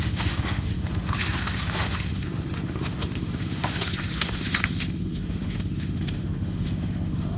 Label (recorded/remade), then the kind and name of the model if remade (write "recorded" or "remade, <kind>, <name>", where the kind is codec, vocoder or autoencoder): remade, autoencoder, DAC-VAE